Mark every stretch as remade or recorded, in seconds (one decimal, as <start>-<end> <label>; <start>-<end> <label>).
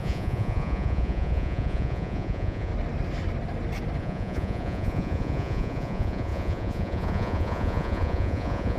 0.0-2.7 remade; 2.7-4.0 recorded; 4.0-8.8 remade